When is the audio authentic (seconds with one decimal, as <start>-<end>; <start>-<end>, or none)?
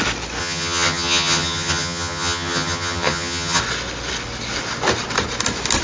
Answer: 0.0-0.4; 3.6-5.8